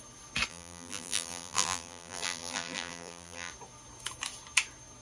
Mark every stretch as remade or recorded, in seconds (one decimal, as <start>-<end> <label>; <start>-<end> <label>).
0.0-0.5 recorded; 0.5-3.5 remade; 3.5-5.0 recorded